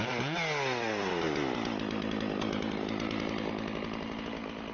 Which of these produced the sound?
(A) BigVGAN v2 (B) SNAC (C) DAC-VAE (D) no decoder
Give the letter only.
D